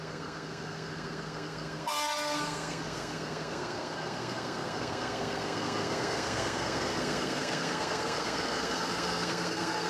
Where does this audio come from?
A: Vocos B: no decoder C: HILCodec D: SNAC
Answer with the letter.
D